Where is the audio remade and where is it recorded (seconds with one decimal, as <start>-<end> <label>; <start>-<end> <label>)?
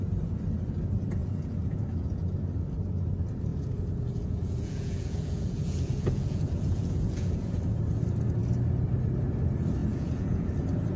0.0-1.2 recorded; 1.2-2.3 remade; 2.3-3.5 recorded; 3.5-7.6 remade; 7.6-9.8 recorded; 9.8-10.5 remade; 10.5-11.0 recorded